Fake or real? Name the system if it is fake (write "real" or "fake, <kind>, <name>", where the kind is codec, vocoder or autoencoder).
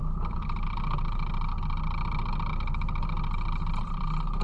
real